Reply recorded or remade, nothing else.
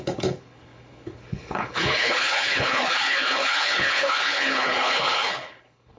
remade